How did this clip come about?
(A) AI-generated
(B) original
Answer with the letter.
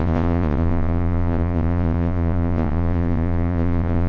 A